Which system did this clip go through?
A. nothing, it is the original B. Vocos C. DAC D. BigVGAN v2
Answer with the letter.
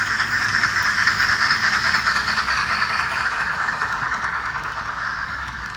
C